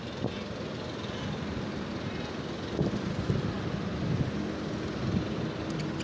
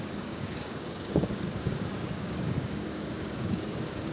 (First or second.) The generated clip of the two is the second